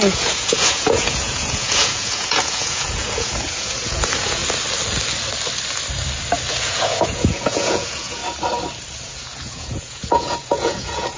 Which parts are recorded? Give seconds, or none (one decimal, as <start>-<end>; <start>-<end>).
4.4-6.5; 8.2-9.0